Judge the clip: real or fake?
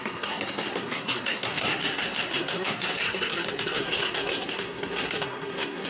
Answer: fake